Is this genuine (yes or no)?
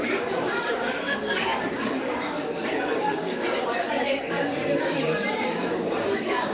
no